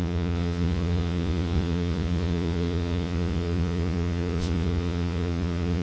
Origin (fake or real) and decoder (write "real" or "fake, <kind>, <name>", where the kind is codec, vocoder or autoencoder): fake, vocoder, Vocos